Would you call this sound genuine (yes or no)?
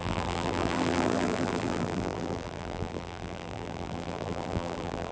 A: no